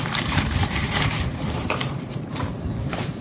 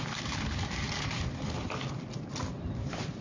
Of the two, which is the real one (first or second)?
second